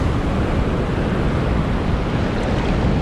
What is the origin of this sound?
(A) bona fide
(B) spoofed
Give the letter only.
A